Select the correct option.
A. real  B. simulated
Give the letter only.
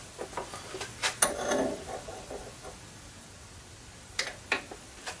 A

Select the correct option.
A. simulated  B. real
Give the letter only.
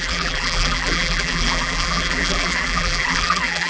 A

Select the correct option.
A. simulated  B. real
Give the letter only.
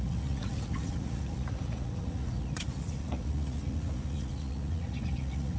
A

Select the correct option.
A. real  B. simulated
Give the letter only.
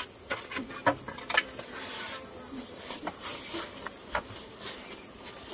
A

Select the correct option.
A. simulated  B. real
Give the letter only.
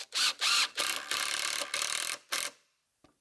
B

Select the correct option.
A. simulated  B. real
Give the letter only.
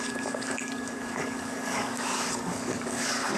A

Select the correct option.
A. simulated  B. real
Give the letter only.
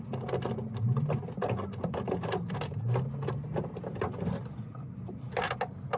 B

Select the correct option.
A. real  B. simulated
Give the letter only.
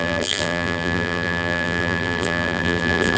B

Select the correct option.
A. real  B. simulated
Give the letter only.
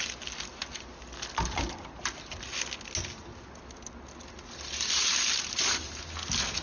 A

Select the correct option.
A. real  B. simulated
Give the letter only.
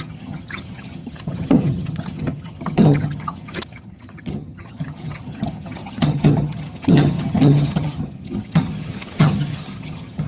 B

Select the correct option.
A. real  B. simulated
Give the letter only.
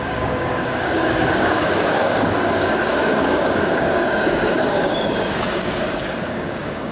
B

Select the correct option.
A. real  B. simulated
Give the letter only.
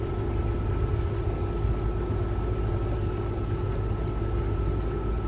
A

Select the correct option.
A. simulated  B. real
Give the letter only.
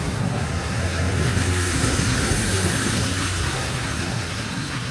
A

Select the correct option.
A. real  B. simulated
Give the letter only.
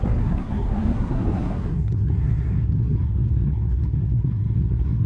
B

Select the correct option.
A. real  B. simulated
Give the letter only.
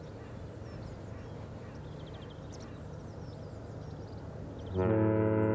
A